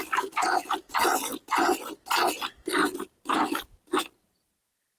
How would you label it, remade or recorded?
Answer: recorded